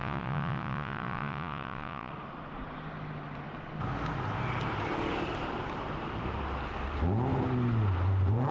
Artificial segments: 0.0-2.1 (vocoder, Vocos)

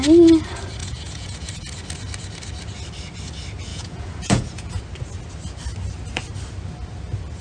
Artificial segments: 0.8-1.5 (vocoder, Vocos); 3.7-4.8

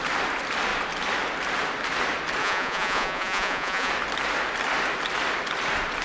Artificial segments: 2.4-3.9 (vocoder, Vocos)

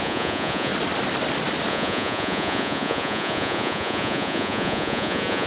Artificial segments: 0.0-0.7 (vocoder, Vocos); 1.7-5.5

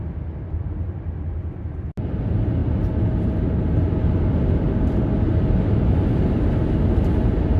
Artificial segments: none